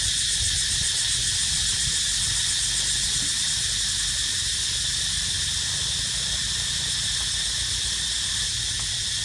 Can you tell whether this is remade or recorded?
recorded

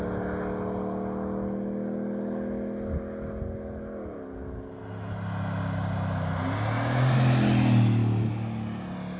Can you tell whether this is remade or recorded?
recorded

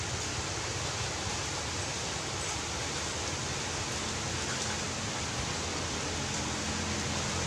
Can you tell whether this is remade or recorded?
recorded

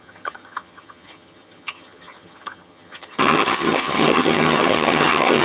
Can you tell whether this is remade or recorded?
remade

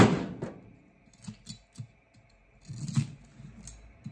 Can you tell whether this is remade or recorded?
recorded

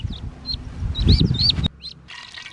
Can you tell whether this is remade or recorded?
recorded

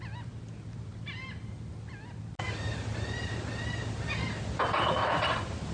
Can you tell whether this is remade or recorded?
recorded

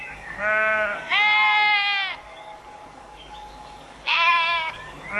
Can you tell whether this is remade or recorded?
remade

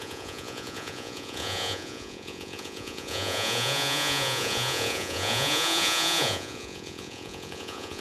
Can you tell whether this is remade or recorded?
remade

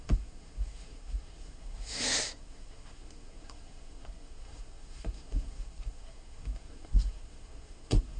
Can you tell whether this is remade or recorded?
remade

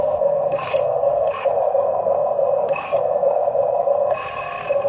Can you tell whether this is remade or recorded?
remade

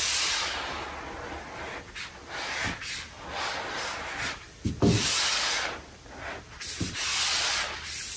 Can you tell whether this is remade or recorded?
recorded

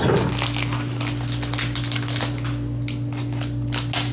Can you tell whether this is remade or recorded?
recorded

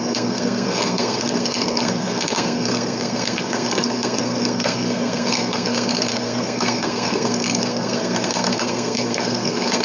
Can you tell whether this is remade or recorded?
remade